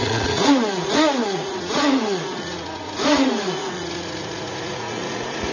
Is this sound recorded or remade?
remade